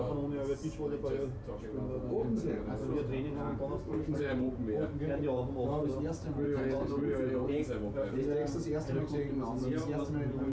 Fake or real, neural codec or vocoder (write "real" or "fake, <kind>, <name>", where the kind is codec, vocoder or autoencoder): real